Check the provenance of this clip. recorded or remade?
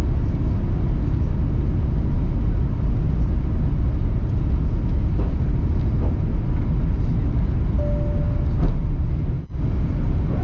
recorded